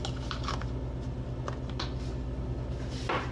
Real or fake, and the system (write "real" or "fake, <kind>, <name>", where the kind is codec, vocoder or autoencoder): real